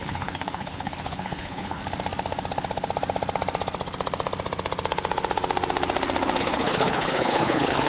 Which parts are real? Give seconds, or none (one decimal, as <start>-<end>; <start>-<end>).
1.8-6.4